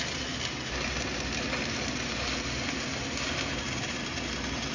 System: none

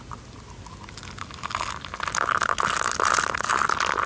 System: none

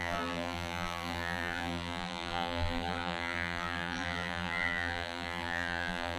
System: vocoder, BigVGAN v2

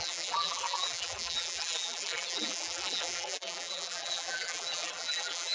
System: vocoder, BigVGAN v2